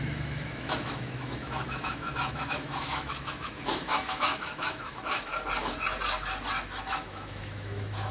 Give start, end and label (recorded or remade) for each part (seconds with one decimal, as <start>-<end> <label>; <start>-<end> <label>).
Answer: 0.0-5.3 remade; 5.3-6.9 recorded; 6.9-8.1 remade